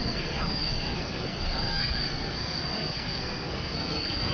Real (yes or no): no